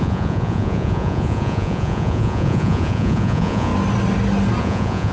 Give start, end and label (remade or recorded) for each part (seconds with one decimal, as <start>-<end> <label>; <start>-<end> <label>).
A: 0.0-3.7 remade; 3.7-4.6 recorded; 4.6-5.1 remade